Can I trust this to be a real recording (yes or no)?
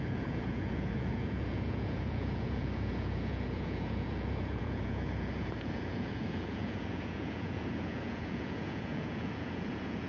no